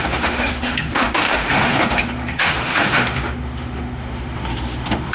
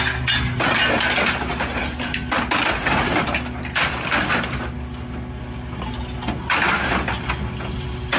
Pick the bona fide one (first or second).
second